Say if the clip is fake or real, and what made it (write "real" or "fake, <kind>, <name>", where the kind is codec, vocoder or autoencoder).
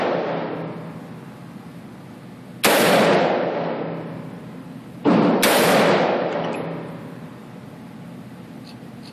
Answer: real